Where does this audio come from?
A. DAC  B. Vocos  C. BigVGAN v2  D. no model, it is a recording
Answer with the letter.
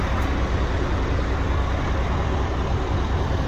D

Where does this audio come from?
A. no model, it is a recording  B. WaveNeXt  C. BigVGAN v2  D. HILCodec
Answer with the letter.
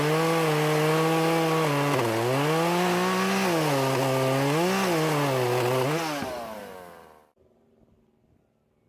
A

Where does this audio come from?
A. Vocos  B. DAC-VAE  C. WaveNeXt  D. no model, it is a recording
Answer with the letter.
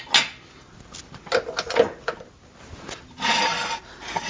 D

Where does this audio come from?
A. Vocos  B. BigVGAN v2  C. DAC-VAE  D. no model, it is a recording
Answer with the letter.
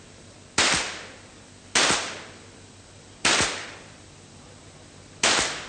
B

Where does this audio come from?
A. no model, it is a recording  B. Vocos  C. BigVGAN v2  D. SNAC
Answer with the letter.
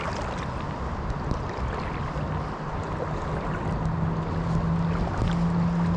A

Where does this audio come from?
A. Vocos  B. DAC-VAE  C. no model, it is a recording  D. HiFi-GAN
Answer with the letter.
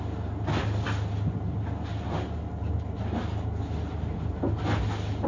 C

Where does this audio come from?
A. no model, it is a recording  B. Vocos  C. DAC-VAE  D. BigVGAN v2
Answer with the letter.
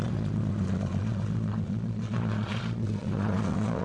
B